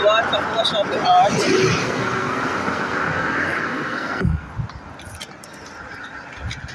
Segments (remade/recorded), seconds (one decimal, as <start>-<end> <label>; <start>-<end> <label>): 0.0-1.8 recorded; 1.8-4.5 remade; 4.5-6.7 recorded